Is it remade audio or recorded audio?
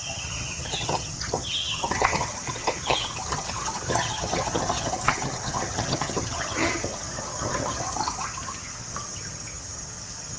remade